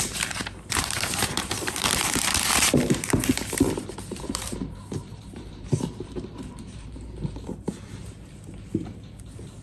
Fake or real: fake